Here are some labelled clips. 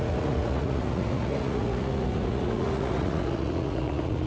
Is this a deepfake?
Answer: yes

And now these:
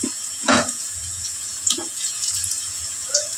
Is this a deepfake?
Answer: yes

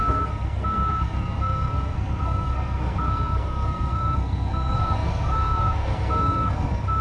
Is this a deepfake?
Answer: yes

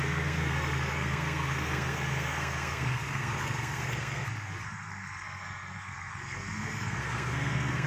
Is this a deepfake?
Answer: yes